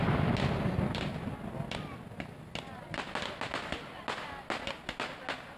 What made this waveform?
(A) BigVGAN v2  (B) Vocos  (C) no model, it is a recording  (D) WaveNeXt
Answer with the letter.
C